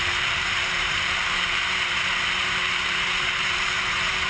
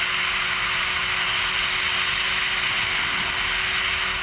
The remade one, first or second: first